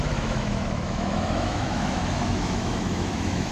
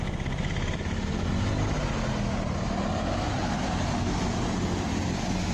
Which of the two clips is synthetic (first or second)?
first